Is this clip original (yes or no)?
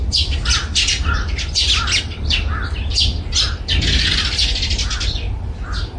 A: yes